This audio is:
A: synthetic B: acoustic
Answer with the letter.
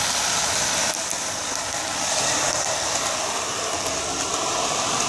B